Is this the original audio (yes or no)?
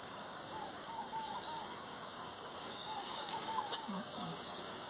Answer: no